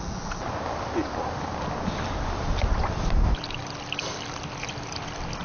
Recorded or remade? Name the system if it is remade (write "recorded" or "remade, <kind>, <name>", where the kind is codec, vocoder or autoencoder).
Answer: recorded